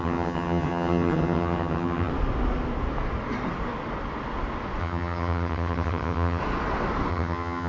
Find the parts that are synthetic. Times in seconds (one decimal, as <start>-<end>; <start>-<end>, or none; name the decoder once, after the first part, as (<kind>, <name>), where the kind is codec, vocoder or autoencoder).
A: 0.0-2.1 (vocoder, HiFi-GAN); 4.8-6.4; 7.1-7.7